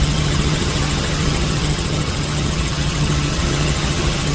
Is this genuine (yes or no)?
no